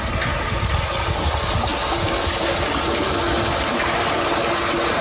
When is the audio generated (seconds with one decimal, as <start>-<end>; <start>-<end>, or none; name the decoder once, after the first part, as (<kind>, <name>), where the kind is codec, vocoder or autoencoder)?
none